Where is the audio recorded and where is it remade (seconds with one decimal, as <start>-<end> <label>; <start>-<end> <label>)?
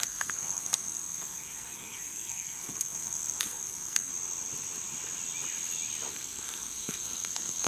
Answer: 0.0-4.1 remade; 4.1-6.1 recorded; 6.1-7.7 remade